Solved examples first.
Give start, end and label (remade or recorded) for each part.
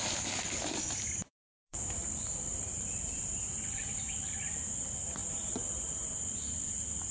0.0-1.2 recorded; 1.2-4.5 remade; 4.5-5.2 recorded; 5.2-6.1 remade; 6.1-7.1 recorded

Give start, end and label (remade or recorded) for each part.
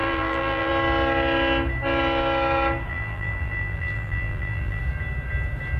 0.0-0.7 remade; 0.7-2.9 recorded; 2.9-4.8 remade; 4.8-5.8 recorded